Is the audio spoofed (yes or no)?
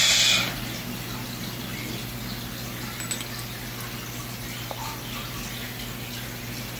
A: no